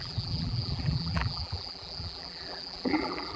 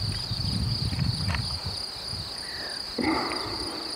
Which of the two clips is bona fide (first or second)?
second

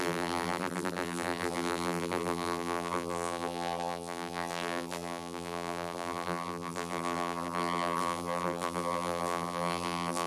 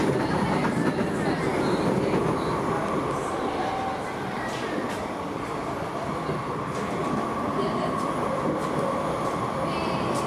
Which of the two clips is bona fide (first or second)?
second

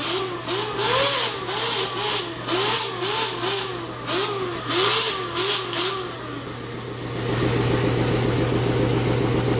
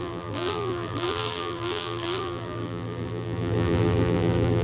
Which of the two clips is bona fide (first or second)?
first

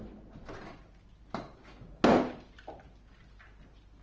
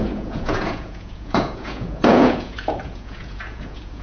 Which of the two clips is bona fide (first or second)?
first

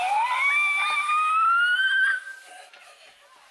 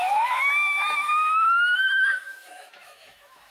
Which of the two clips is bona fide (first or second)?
first